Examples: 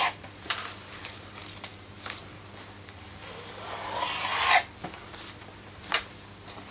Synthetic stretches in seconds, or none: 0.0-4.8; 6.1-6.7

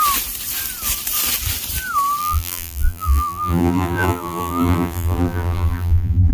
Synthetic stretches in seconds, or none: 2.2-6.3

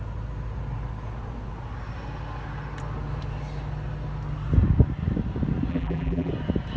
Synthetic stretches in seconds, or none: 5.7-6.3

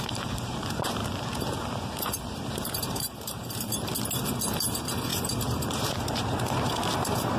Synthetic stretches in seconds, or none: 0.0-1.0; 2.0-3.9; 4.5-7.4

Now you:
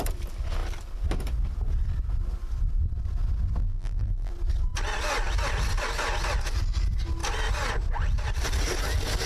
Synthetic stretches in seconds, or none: 3.6-4.3

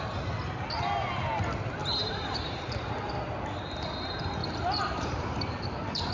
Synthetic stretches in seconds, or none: 1.8-3.1; 4.4-6.1

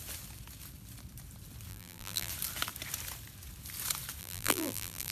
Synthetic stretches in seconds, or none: 1.7-2.3; 4.2-5.1

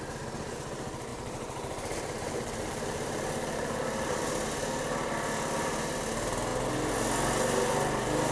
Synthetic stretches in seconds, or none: 1.1-4.3